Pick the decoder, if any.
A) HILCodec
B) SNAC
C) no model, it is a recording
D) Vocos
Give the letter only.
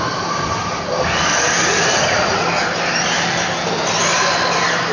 C